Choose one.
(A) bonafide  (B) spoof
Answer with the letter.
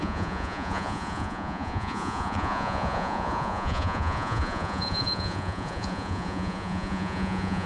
B